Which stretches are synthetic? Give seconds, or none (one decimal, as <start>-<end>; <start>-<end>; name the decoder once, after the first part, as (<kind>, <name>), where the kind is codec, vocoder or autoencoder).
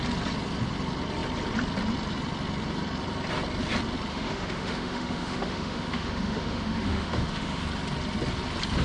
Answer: 4.1-7.6 (autoencoder, DAC-VAE)